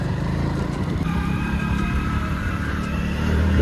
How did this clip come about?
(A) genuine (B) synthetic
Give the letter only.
B